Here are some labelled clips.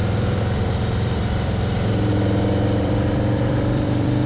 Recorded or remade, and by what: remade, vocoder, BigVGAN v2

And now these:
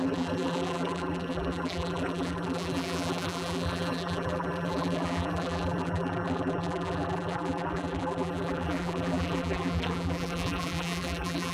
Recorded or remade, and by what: remade, vocoder, BigVGAN v2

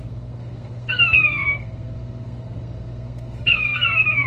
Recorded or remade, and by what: remade, codec, SNAC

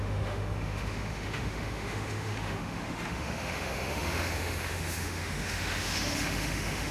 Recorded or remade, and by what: remade, autoencoder, DAC-VAE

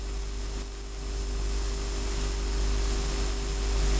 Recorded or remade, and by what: recorded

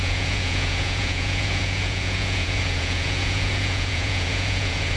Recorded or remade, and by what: remade, vocoder, Vocos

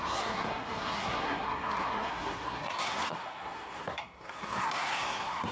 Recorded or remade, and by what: remade, codec, SNAC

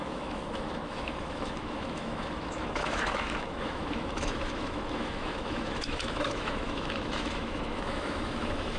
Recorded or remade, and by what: remade, autoencoder, DAC-VAE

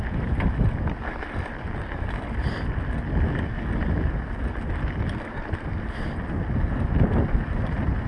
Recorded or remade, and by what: recorded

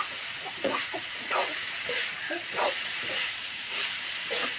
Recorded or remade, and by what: remade, vocoder, Vocos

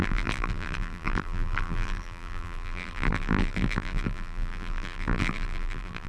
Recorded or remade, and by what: remade, vocoder, BigVGAN v2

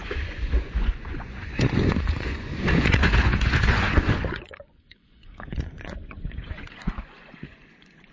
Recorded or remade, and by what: remade, vocoder, Vocos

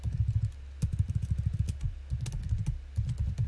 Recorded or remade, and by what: recorded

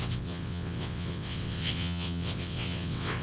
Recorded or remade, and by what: remade, vocoder, WaveNeXt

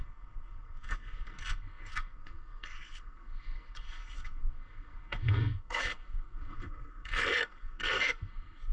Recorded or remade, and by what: remade, codec, SNAC